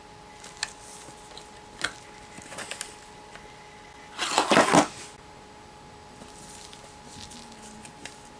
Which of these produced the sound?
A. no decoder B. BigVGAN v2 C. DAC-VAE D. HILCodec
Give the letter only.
A